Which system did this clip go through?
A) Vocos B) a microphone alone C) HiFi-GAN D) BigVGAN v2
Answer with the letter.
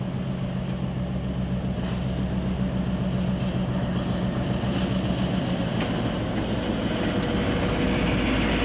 B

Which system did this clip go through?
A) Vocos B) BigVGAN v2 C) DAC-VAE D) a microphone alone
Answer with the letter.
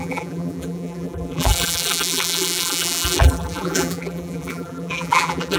B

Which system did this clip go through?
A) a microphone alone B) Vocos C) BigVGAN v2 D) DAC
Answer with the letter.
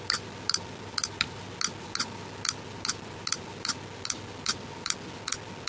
A